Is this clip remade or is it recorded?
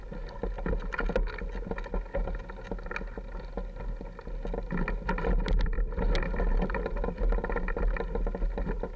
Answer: recorded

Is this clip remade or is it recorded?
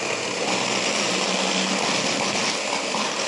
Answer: recorded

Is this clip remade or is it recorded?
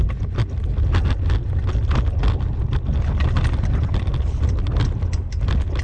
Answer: recorded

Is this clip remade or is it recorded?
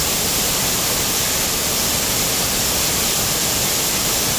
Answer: remade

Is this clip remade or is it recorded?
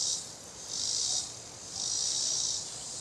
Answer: remade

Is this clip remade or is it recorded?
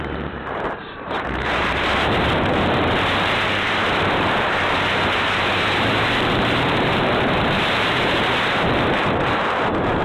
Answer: remade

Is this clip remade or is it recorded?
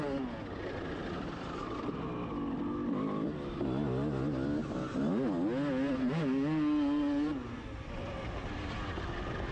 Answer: recorded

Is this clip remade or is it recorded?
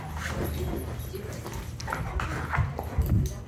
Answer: recorded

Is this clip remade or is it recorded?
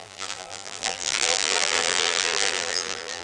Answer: remade